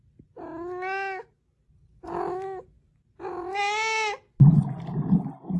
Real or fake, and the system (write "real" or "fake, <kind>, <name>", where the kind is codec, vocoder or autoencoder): real